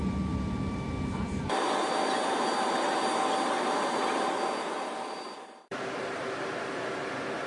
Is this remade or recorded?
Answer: recorded